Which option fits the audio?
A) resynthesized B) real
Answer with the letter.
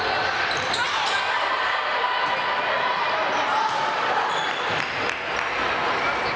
B